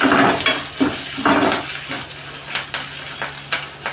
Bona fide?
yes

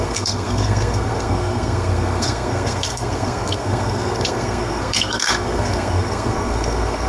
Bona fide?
no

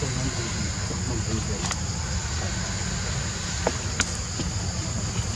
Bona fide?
yes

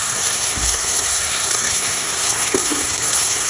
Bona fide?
no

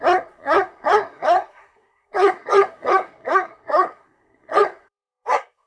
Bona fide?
no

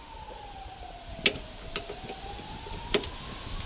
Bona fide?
yes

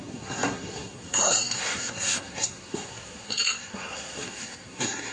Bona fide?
no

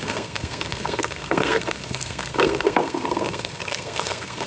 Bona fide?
no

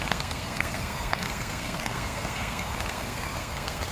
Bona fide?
no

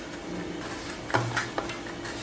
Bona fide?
yes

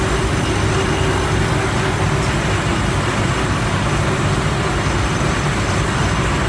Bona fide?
yes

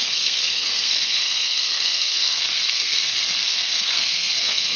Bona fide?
no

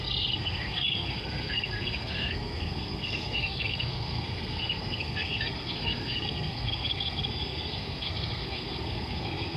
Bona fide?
no